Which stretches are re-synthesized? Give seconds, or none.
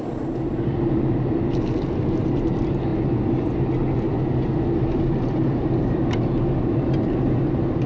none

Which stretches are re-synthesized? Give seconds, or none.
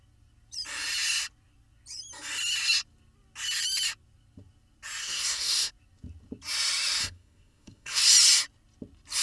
5.0-5.7 (codec, SNAC); 7.0-8.0